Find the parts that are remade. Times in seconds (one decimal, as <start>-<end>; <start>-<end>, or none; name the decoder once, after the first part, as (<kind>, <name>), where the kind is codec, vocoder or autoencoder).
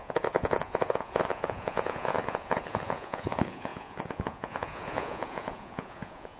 0.0-6.4 (vocoder, Vocos)